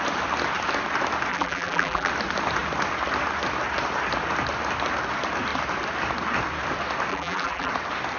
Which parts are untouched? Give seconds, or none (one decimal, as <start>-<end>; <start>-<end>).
0.0-1.3; 2.1-7.1; 7.7-8.2